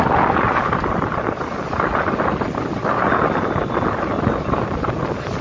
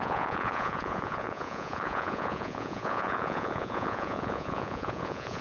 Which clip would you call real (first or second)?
first